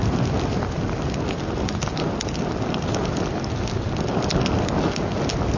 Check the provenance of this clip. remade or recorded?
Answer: recorded